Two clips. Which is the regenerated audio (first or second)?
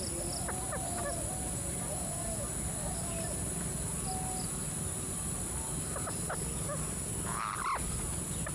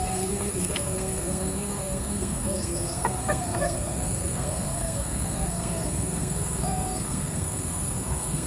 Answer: second